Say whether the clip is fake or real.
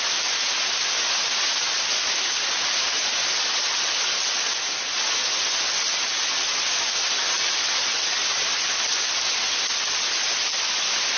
real